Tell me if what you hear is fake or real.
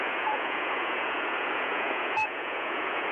fake